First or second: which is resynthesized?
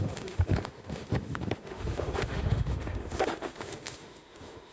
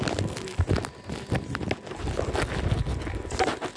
first